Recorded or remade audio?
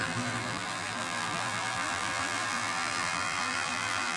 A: remade